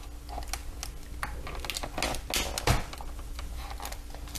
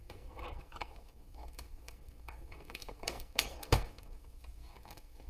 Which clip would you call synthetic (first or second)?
second